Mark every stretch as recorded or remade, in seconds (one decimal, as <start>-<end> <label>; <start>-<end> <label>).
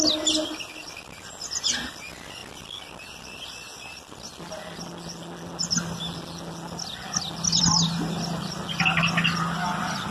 0.0-10.1 recorded